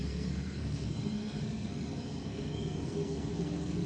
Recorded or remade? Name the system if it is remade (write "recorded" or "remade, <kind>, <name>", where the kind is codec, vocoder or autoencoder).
remade, codec, SNAC